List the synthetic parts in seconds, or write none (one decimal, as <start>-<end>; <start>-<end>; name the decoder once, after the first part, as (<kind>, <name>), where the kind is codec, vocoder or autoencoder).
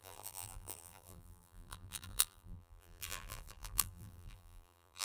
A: 0.0-5.0 (vocoder, BigVGAN v2)